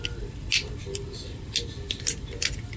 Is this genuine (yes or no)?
yes